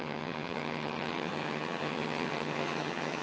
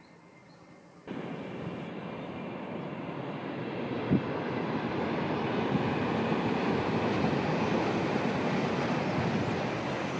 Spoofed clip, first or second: first